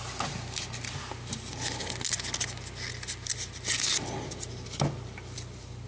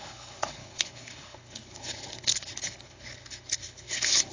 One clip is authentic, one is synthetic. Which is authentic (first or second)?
first